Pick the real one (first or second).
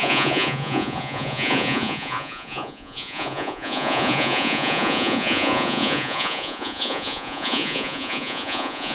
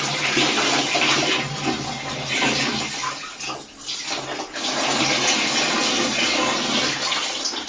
second